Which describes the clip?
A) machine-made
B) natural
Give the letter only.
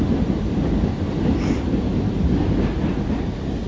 B